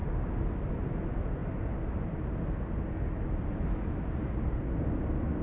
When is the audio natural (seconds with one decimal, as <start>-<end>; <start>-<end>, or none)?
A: 0.0-5.4